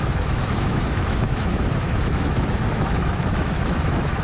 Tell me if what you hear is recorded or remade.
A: remade